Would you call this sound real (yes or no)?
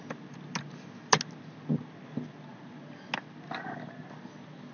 yes